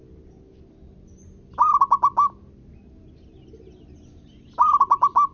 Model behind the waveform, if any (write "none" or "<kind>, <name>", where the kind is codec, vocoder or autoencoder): none